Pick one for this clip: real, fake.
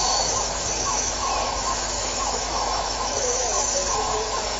fake